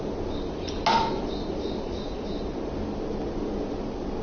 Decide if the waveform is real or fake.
real